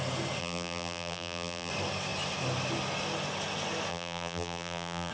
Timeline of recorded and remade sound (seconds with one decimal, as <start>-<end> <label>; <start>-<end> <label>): 0.0-0.4 recorded; 0.4-1.7 remade; 1.7-3.9 recorded; 3.9-5.1 remade